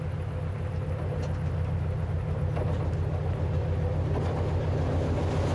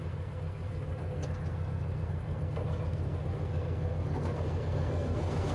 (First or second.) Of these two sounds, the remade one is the second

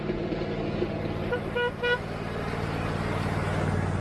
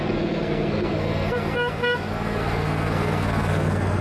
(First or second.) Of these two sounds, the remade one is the second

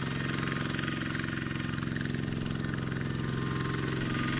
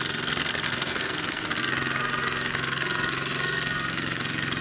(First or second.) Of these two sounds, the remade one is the second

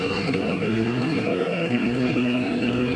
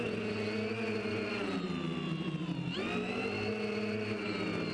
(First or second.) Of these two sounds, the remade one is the first